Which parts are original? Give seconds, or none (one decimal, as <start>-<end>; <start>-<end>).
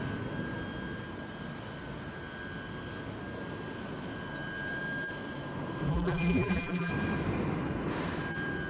0.0-5.9; 6.9-8.7